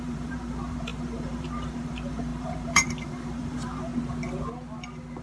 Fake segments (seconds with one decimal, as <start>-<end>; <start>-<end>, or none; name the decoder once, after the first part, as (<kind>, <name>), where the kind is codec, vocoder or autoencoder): 0.0-3.9 (vocoder, BigVGAN v2)